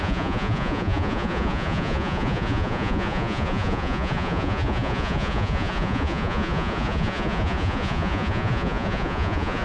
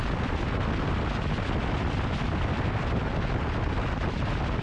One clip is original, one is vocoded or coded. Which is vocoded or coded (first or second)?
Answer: first